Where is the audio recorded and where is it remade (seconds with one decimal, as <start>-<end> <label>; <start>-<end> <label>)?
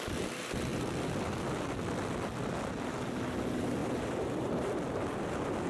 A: 0.0-5.7 recorded